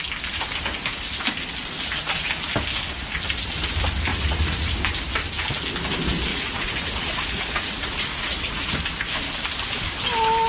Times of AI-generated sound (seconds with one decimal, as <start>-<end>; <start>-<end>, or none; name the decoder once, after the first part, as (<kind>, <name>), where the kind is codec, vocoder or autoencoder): 4.1-4.7 (vocoder, Vocos); 6.3-8.7